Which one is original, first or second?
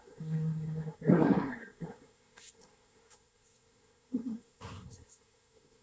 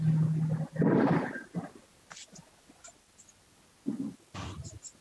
second